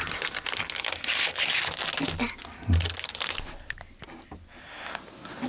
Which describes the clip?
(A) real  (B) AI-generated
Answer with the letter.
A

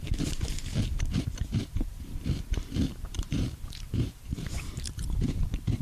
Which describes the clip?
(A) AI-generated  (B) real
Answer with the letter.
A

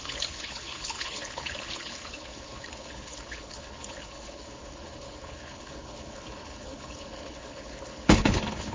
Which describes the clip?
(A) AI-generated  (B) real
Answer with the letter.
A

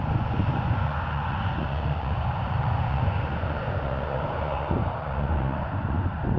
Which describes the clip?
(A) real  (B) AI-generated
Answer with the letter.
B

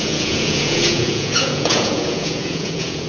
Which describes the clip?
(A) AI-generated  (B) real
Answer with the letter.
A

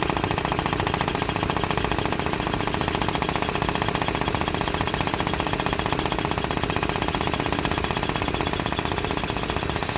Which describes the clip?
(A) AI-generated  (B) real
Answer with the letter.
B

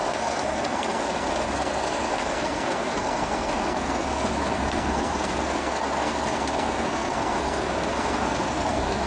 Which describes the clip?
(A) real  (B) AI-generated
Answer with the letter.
B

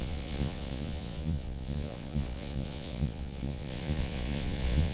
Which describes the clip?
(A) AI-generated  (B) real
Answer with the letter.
A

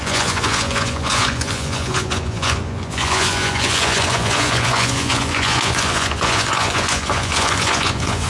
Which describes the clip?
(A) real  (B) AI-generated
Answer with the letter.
B